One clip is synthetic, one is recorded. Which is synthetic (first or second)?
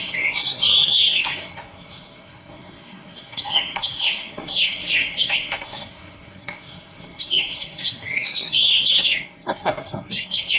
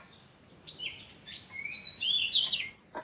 first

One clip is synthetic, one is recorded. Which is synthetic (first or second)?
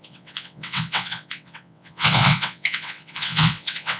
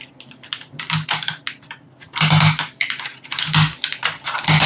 first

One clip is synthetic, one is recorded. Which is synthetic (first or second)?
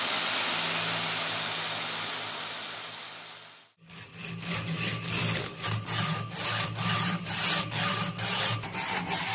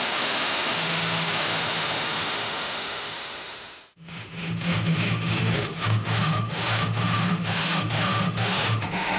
second